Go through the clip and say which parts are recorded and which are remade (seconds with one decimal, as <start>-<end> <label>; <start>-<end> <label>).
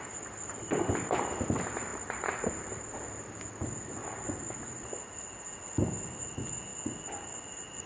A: 0.0-1.9 recorded; 1.9-3.3 remade; 3.3-4.0 recorded; 4.0-4.6 remade; 4.6-7.9 recorded